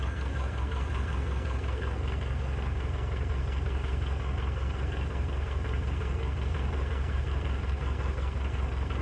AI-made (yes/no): yes